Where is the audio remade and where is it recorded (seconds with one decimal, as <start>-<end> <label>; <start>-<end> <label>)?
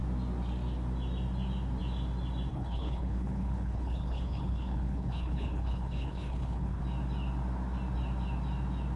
0.0-2.5 recorded; 2.5-6.8 remade; 6.8-9.0 recorded